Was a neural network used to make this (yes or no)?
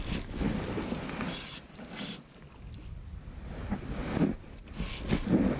no